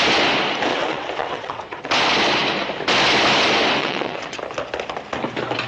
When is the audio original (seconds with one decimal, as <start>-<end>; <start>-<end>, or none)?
0.0-0.7; 1.9-3.8; 4.4-5.7